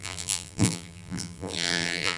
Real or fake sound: fake